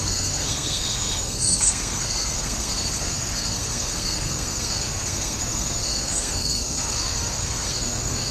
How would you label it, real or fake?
fake